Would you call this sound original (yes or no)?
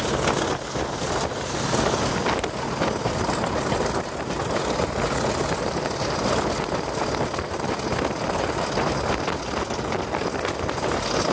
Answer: yes